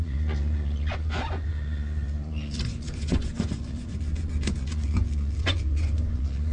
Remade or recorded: remade